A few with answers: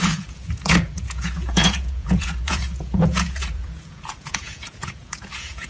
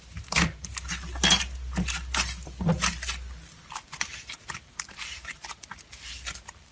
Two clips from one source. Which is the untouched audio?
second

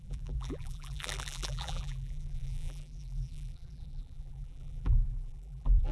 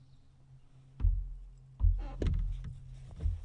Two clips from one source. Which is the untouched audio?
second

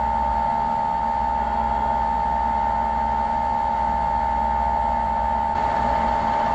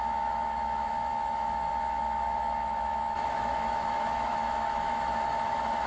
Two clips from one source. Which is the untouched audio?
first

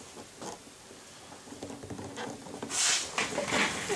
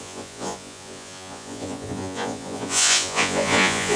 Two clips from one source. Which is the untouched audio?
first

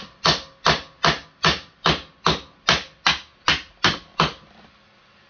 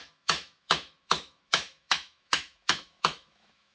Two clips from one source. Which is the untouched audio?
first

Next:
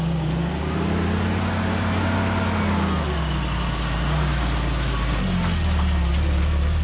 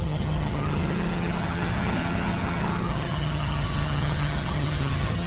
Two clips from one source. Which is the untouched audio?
first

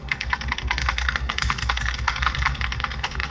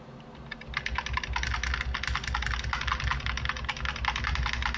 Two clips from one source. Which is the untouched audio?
second